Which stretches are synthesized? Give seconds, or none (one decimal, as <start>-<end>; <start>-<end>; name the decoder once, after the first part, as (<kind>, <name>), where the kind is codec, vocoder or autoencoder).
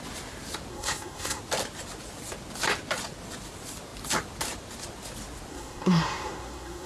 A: 0.7-1.4 (codec, SNAC); 5.5-6.9